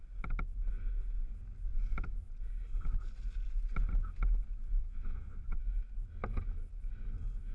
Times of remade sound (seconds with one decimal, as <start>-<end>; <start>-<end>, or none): 4.8-5.6